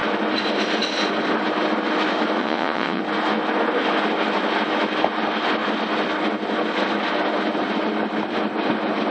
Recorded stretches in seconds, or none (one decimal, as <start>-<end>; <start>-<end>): 0.0-2.4; 3.0-9.1